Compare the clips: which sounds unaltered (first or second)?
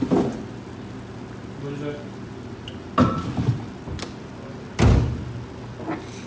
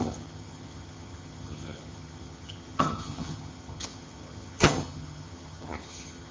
first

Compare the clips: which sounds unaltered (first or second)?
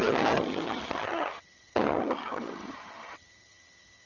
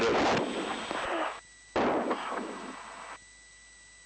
second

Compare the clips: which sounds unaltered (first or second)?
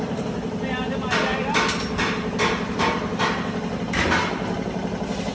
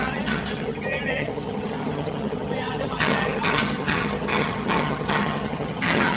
first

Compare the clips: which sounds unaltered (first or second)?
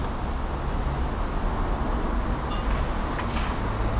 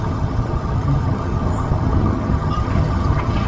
first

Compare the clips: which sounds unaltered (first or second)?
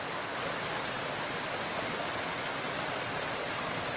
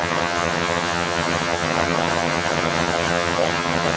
first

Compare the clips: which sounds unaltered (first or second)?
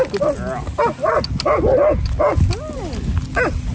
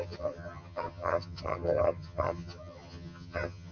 first